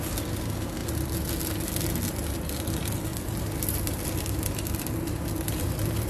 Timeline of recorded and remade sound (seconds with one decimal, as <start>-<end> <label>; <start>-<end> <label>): 0.0-3.1 recorded; 3.1-6.1 remade

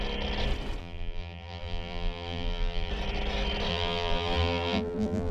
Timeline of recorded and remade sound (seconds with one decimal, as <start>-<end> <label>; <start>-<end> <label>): 0.0-0.8 recorded; 0.8-2.9 remade; 2.9-3.7 recorded; 3.7-5.3 remade

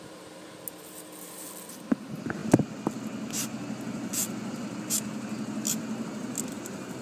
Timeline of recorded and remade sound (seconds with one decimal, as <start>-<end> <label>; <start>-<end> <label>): 0.0-7.0 recorded